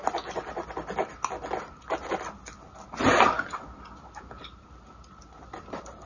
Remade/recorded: recorded